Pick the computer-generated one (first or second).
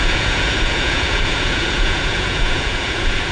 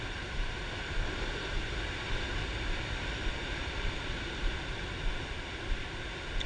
first